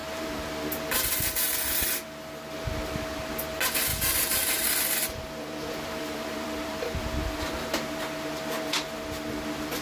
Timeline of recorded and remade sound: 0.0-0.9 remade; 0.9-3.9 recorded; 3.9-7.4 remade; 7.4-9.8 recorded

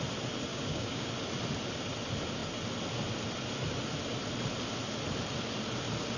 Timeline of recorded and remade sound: 0.0-0.5 recorded; 0.5-1.1 remade; 1.1-6.2 recorded

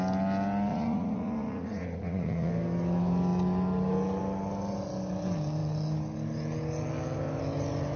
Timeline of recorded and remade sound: 0.0-0.7 recorded; 0.7-2.5 remade; 2.5-8.0 recorded